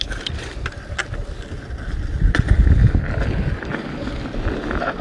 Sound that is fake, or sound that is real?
real